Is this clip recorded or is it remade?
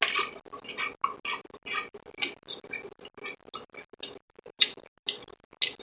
recorded